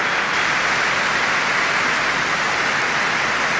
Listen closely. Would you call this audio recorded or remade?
recorded